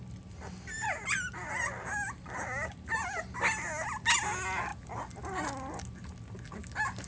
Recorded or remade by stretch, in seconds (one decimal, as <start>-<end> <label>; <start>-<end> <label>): 0.0-7.1 recorded